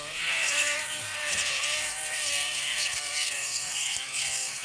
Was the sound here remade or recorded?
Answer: remade